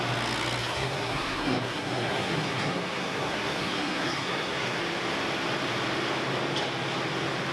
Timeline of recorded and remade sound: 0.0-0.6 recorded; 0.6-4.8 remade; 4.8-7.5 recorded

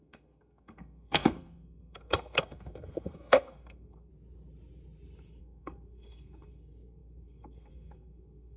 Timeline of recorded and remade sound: 0.0-4.1 remade; 4.1-5.4 recorded; 5.4-8.6 remade

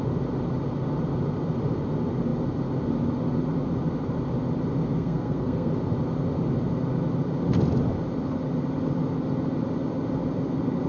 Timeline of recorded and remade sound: 0.0-4.9 recorded; 4.9-5.7 remade; 5.7-10.9 recorded

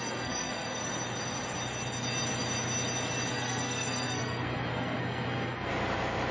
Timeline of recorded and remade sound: 0.0-0.9 remade; 0.9-3.3 recorded; 3.3-5.7 remade; 5.7-6.3 recorded

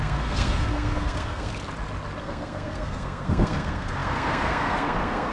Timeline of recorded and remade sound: 0.0-1.5 remade; 1.5-2.2 recorded; 2.2-5.3 remade

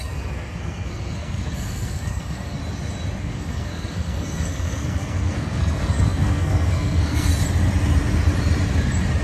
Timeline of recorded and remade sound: 0.0-2.6 remade; 2.6-3.2 recorded; 3.2-7.3 remade; 7.3-9.2 recorded

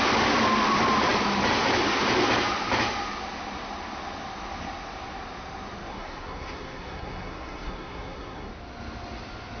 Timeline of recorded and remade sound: 0.0-5.9 recorded; 5.9-8.5 remade; 8.5-9.6 recorded

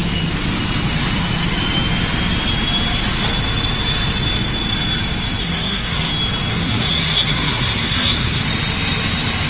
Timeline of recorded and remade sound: 0.0-5.4 recorded; 5.4-6.1 remade; 6.1-6.5 recorded; 6.5-8.4 remade; 8.4-9.5 recorded